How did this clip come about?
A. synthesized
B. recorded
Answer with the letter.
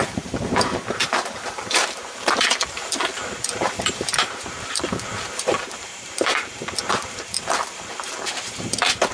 A